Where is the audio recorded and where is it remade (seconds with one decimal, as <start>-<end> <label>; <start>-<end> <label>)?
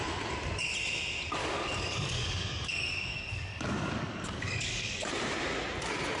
0.0-1.4 recorded; 1.4-5.1 remade; 5.1-6.2 recorded